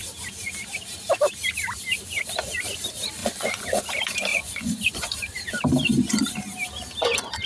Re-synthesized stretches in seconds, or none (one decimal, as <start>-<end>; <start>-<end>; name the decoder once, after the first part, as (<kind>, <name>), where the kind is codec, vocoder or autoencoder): 3.2-3.8 (vocoder, Vocos); 4.3-5.1